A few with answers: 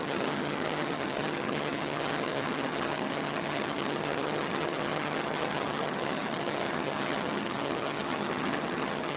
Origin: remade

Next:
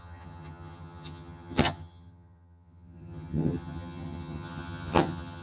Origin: remade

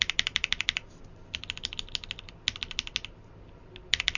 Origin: recorded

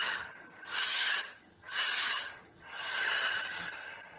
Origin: remade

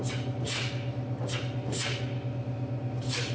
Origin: recorded